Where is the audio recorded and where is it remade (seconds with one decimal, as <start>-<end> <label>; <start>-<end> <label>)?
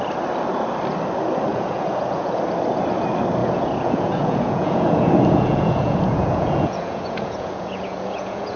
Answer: 0.0-1.5 recorded; 1.5-2.3 remade; 2.3-3.4 recorded; 3.4-8.6 remade